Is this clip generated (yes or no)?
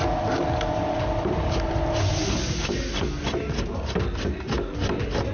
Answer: no